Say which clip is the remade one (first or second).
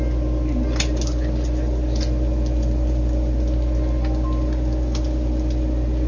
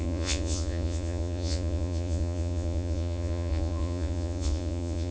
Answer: second